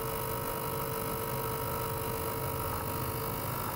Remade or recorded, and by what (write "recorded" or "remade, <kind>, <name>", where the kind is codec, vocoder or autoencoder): recorded